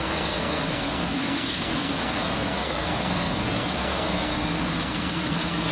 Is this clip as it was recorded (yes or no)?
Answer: no